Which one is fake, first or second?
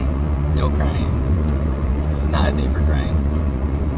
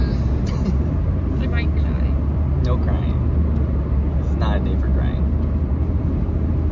first